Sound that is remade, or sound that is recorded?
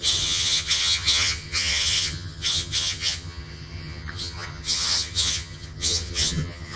remade